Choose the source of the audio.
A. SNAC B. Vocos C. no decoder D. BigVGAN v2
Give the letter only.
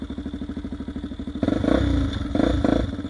C